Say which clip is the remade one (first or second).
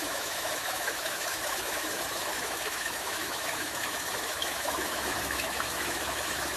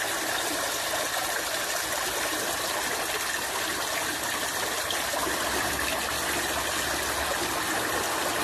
first